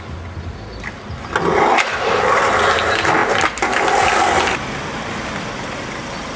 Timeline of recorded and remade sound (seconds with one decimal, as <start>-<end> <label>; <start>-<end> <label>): 0.0-6.4 recorded